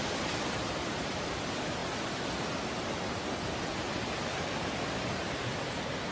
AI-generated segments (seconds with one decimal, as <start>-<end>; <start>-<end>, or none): 0.0-1.8; 4.7-6.1